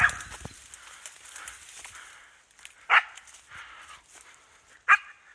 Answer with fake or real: real